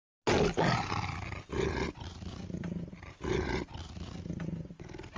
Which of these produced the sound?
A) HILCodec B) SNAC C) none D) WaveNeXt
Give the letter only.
C